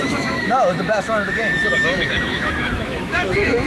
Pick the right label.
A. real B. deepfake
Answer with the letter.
B